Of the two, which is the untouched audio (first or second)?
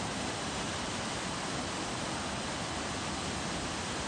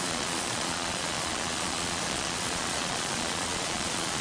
first